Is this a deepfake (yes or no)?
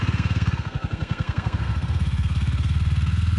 yes